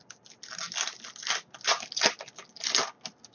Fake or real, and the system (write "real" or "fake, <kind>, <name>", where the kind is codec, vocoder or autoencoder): real